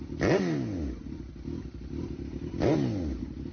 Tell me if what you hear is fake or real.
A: real